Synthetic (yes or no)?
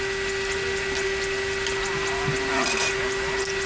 no